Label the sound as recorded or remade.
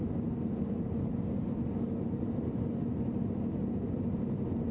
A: recorded